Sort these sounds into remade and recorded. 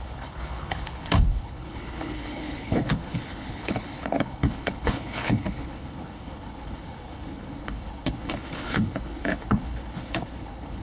remade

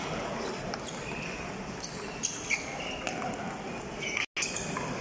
recorded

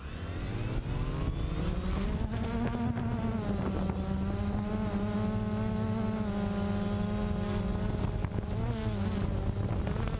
recorded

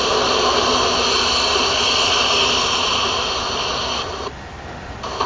recorded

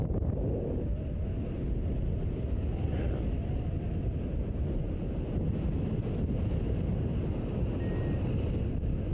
recorded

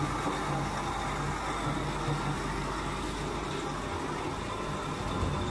recorded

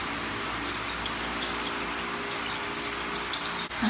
recorded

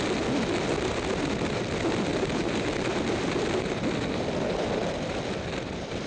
recorded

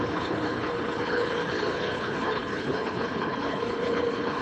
remade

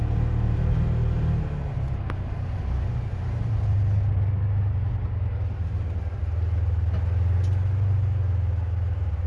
recorded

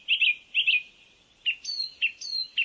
recorded